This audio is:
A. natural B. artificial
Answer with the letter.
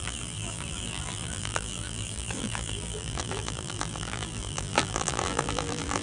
B